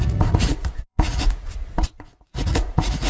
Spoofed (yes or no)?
yes